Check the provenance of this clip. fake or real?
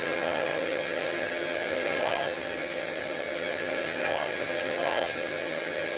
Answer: fake